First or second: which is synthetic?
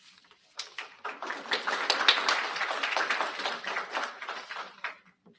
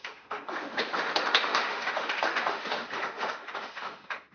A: second